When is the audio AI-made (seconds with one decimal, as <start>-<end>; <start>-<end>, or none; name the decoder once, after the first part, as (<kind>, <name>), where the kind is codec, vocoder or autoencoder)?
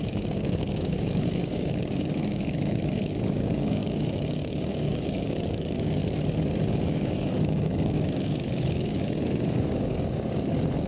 0.0-6.0 (codec, DAC); 6.8-10.9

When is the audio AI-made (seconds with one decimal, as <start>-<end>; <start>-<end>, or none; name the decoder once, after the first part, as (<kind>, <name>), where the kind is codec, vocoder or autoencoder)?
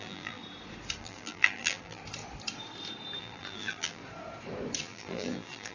0.0-0.4 (vocoder, BigVGAN v2); 1.0-2.0; 3.2-4.0; 4.8-5.7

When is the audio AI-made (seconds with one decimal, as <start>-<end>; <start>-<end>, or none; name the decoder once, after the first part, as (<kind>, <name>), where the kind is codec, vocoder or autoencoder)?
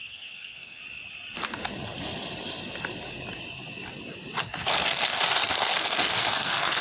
0.0-0.8 (codec, SNAC); 4.4-5.2; 5.7-6.8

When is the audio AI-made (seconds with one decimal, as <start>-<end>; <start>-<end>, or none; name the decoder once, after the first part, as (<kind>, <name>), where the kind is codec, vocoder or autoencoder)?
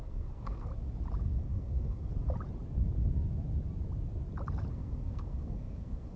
0.0-0.7 (codec, SNAC); 1.2-2.1; 4.7-6.2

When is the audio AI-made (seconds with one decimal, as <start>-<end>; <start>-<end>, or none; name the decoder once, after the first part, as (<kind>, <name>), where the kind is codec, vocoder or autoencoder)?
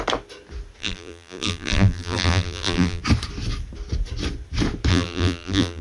0.8-3.0 (vocoder, BigVGAN v2); 4.9-5.8